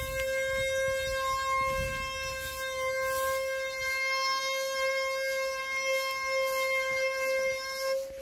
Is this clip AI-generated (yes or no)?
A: no